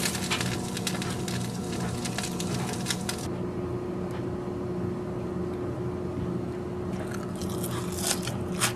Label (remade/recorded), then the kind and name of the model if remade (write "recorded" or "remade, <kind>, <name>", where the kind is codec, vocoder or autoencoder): recorded